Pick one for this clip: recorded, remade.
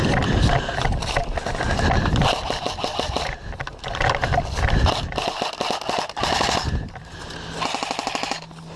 recorded